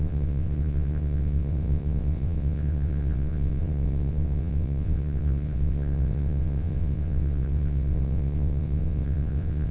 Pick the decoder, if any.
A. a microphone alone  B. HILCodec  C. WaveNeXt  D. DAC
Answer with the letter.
C